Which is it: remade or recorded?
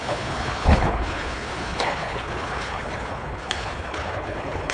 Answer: remade